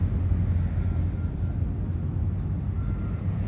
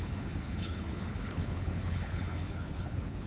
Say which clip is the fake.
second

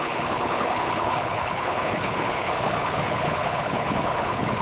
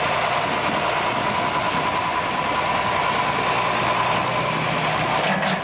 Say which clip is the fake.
first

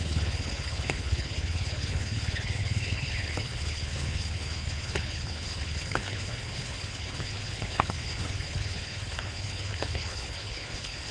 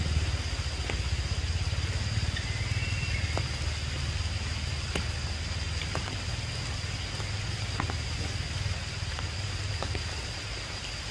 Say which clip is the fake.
first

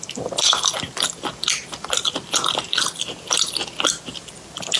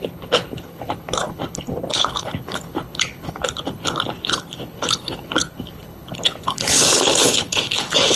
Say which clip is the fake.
second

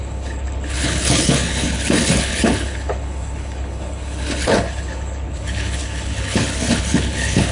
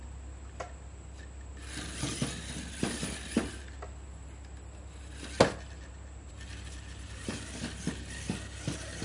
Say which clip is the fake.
first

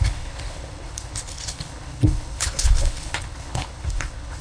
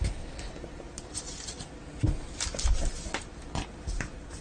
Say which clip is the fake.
first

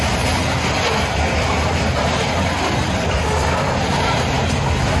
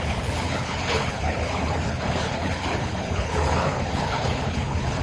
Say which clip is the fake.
second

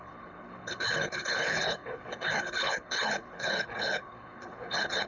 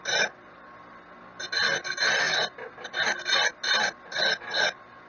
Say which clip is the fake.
first